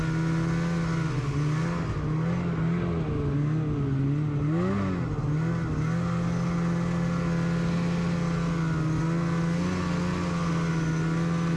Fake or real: real